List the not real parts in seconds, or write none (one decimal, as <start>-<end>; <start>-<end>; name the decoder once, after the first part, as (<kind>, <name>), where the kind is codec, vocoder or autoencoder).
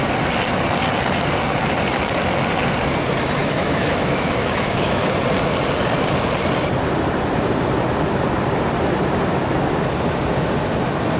3.4-5.0 (autoencoder, DAC-VAE)